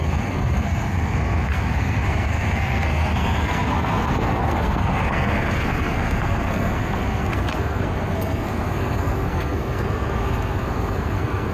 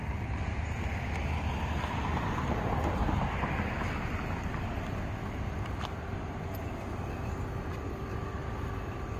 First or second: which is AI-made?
first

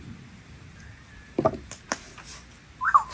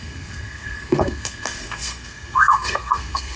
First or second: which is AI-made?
second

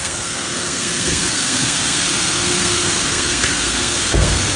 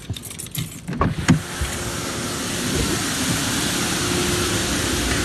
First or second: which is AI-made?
first